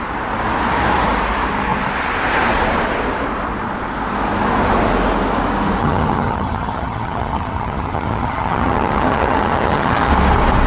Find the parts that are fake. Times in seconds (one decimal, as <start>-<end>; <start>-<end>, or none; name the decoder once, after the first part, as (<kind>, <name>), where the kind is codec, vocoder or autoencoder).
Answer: 5.8-10.1 (vocoder, HiFi-GAN)

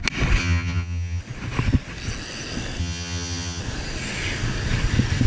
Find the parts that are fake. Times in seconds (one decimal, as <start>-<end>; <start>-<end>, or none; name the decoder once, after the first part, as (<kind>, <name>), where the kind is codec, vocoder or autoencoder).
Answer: 0.4-1.2 (vocoder, HiFi-GAN); 2.8-3.6